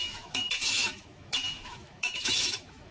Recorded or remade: remade